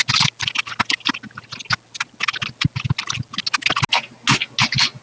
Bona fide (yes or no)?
yes